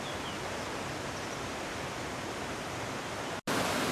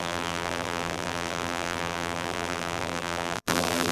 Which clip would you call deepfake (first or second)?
second